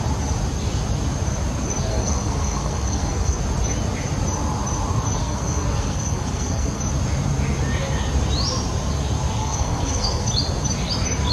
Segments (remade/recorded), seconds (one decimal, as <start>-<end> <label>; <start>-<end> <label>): 0.0-1.9 recorded; 1.9-3.4 remade; 3.4-5.2 recorded; 5.2-6.8 remade; 6.8-9.4 recorded; 9.4-10.3 remade; 10.3-11.3 recorded